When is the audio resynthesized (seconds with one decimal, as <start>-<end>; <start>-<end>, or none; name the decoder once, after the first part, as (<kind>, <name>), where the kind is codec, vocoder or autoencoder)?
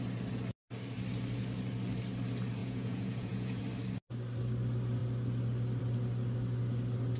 2.6-3.6 (vocoder, Vocos)